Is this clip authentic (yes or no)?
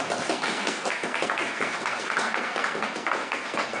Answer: no